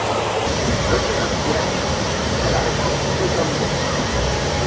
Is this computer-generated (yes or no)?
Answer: yes